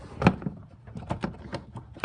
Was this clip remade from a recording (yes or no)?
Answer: no